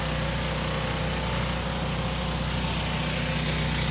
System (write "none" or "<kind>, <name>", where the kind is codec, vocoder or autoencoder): none